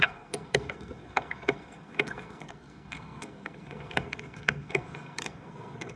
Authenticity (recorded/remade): remade